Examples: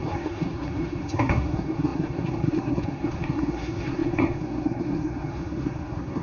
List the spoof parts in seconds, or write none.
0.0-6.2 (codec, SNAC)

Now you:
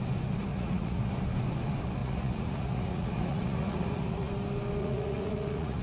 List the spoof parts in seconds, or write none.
0.5-1.1 (vocoder, Vocos); 2.0-4.3; 4.8-5.8

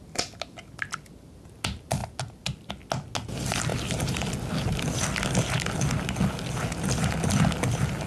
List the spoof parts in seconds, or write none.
none

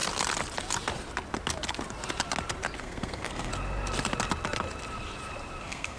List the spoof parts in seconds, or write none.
2.8-3.5 (codec, SNAC); 5.6-6.0

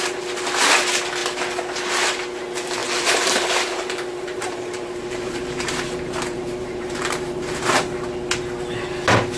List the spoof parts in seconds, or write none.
2.8-7.6 (vocoder, BigVGAN v2)

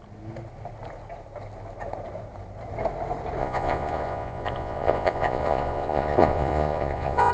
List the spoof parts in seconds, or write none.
3.4-7.3 (vocoder, Vocos)

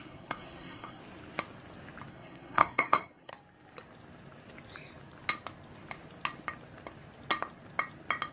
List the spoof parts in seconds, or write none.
0.0-1.0 (codec, SNAC); 2.1-3.3